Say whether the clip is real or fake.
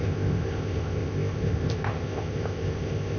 fake